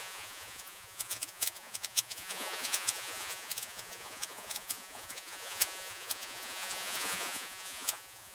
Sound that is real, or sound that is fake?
fake